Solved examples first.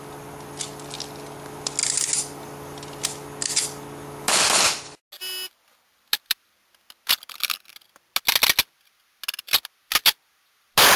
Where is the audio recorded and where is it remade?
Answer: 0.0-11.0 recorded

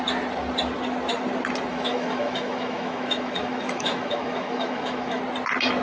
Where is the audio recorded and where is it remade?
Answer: 0.0-1.7 recorded; 1.7-5.2 remade; 5.2-5.8 recorded